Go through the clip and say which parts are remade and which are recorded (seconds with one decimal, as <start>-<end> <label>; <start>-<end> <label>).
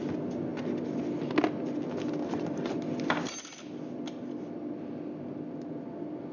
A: 0.0-6.3 recorded